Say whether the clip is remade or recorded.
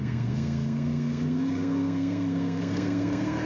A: remade